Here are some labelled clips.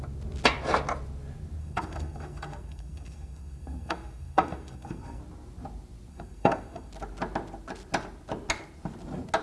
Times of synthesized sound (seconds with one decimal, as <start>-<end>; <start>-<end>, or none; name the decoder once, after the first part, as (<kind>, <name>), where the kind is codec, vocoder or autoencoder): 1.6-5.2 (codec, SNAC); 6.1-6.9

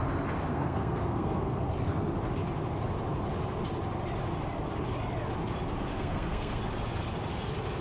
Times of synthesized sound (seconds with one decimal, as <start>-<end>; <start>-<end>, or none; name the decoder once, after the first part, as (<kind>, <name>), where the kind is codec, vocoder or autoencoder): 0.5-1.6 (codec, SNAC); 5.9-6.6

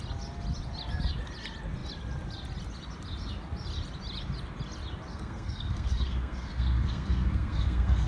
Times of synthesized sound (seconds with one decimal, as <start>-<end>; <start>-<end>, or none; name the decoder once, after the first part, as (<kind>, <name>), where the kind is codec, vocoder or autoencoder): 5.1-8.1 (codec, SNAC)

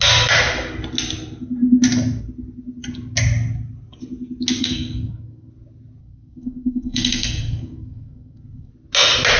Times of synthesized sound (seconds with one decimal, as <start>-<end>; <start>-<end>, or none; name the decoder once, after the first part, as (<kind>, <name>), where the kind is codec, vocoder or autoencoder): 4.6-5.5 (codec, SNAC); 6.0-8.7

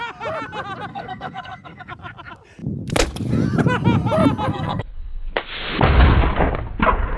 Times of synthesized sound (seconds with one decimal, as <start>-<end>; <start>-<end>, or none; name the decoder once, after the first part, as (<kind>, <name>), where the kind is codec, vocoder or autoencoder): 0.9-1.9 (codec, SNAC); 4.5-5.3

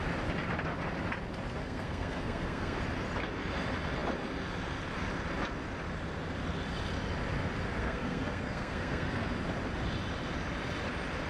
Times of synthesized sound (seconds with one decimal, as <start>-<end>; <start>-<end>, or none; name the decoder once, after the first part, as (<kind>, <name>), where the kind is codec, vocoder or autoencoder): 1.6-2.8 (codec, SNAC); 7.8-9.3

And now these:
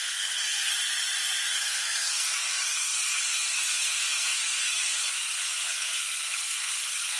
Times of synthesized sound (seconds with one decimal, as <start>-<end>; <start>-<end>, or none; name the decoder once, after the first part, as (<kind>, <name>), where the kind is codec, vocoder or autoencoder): 0.0-0.7 (codec, SNAC); 1.5-7.2